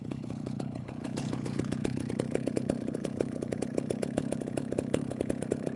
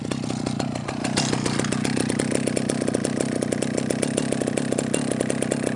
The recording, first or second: second